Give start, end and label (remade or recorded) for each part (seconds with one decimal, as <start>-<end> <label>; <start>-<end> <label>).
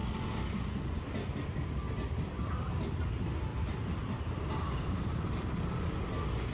0.0-3.5 recorded; 3.5-5.6 remade; 5.6-6.5 recorded